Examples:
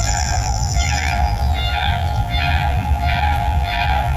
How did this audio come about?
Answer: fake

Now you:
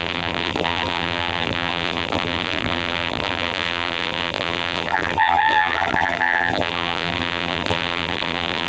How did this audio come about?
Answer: fake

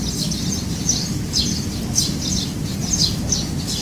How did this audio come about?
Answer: real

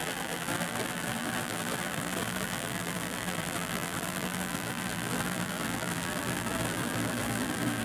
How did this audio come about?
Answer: fake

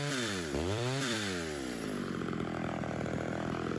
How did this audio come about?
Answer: fake